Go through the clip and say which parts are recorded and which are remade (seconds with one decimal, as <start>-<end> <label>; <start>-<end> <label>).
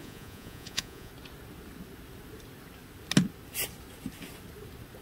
0.0-1.1 remade; 1.1-5.0 recorded